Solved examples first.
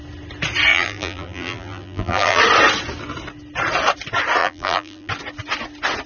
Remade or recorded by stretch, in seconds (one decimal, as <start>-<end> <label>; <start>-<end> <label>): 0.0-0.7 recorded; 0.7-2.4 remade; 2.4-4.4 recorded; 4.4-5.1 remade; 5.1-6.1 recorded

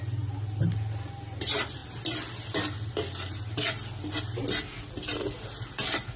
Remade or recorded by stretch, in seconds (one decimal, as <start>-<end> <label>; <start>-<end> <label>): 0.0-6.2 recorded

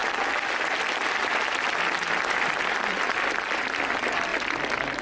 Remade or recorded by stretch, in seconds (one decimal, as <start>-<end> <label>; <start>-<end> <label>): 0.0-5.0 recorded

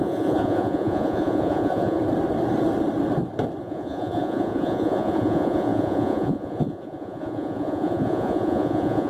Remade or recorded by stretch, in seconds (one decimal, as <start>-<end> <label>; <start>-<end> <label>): 0.0-2.0 remade; 2.0-3.6 recorded; 3.6-9.1 remade

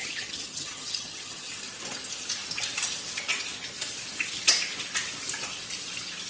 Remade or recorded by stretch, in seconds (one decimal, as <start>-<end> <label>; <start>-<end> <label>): 0.0-1.5 remade; 1.5-6.3 recorded

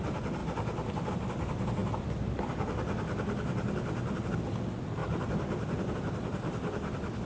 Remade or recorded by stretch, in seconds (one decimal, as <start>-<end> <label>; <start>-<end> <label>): 0.0-0.4 recorded; 0.4-1.1 remade; 1.1-5.0 recorded; 5.0-5.9 remade; 5.9-7.2 recorded

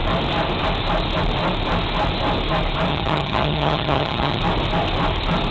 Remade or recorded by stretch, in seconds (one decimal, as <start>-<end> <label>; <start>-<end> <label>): 0.0-2.9 recorded; 2.9-4.4 remade; 4.4-5.5 recorded